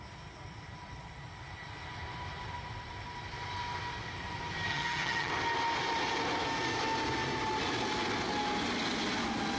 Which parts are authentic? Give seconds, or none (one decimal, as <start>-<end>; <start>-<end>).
0.0-4.7; 5.3-9.6